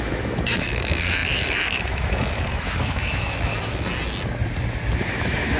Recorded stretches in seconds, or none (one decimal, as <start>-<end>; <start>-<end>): 3.5-5.0